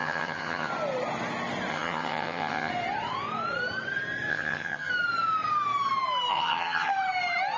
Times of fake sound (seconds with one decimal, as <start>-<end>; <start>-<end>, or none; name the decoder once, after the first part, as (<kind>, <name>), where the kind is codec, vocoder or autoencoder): 0.0-0.7 (vocoder, HiFi-GAN); 1.7-2.7; 4.3-4.9; 6.3-6.9